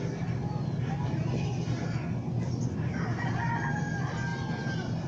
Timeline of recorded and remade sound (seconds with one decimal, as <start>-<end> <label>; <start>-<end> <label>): 0.0-5.1 recorded